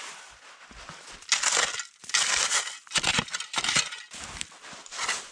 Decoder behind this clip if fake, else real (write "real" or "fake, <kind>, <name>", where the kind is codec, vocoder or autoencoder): real